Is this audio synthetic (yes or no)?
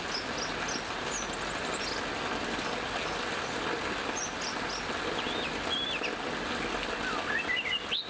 no